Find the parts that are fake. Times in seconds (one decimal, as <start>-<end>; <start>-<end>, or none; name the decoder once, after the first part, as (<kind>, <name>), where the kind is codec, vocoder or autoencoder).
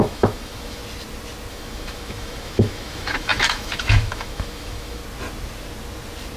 0.0-0.8 (autoencoder, DAC-VAE); 1.5-5.0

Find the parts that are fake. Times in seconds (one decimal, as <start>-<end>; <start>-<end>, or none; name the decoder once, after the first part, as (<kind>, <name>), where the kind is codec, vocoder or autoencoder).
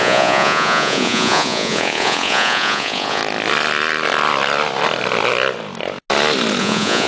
0.0-3.2 (vocoder, Vocos); 6.6-7.1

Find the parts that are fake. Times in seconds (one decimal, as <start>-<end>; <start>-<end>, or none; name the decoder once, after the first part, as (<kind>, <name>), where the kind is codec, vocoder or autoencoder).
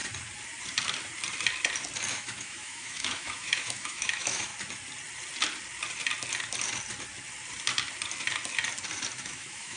2.1-4.5 (autoencoder, DAC-VAE); 9.2-9.8